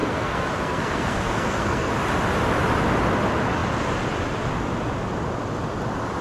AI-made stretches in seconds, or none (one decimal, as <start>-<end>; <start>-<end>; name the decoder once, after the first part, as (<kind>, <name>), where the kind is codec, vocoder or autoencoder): 0.0-1.9 (codec, SNAC)

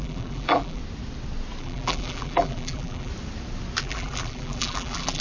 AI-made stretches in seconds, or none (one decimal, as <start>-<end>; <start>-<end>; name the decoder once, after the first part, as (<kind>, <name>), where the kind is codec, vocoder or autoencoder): 0.0-0.8 (vocoder, BigVGAN v2); 1.6-3.1; 3.8-5.2

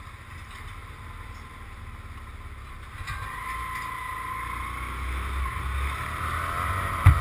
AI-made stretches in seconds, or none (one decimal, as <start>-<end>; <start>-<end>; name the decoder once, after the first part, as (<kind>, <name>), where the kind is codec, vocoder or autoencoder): 0.8-1.8 (vocoder, BigVGAN v2)

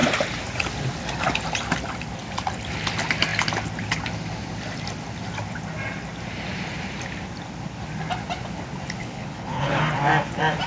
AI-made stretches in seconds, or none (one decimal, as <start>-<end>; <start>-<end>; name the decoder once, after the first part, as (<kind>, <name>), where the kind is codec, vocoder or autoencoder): 9.0-9.8 (codec, HILCodec)

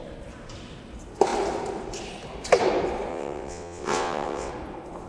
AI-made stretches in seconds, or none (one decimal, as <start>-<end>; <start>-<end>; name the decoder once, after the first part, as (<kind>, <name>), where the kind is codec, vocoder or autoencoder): 3.1-4.5 (vocoder, WaveNeXt)